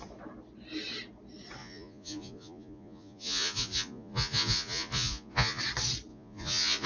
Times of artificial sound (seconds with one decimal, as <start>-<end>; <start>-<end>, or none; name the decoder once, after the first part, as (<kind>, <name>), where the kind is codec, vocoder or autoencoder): 1.6-5.6 (vocoder, Vocos); 6.1-6.9